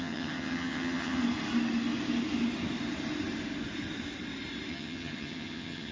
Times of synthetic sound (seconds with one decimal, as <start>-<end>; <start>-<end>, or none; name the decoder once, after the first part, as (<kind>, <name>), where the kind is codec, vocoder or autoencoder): 0.0-1.2 (vocoder, HiFi-GAN); 4.7-5.9